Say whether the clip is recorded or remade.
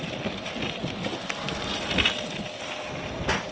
recorded